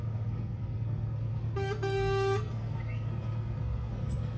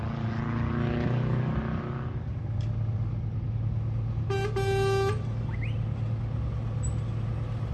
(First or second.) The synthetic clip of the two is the first